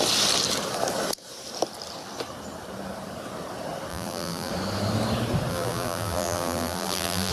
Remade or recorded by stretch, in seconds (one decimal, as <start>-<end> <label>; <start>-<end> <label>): 0.0-3.9 recorded; 3.9-4.5 remade; 4.5-5.5 recorded; 5.5-7.3 remade